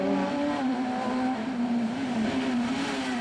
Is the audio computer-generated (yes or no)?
yes